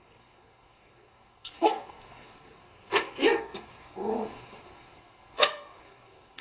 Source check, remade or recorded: remade